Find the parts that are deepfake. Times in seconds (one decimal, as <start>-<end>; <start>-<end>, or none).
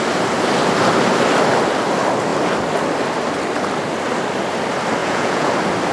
5.0-5.5